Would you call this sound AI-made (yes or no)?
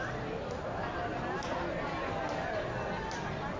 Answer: no